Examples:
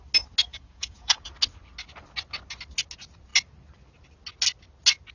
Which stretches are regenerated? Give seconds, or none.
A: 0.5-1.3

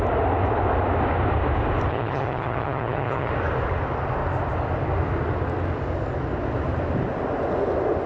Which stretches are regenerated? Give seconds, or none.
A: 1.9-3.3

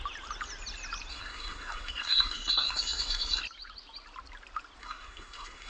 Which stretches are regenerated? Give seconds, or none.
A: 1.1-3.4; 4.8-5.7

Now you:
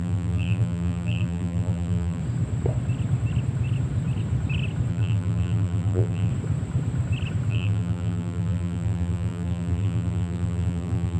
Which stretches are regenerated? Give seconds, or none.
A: 0.0-2.2; 4.9-6.3; 7.5-11.2

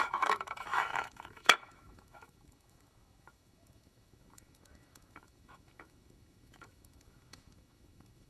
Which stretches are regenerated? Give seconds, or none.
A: 0.0-8.3

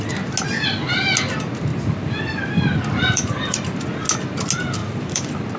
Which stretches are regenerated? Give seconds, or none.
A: 1.7-3.8; 4.8-5.6

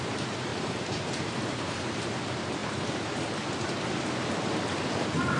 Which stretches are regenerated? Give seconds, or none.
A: 0.5-2.0; 2.6-3.3